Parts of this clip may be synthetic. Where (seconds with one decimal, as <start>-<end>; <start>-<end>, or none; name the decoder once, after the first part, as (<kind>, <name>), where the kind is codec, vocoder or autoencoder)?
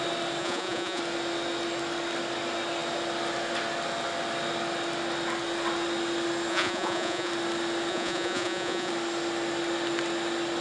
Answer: 0.4-1.0 (vocoder, Vocos); 6.5-7.3; 7.9-8.9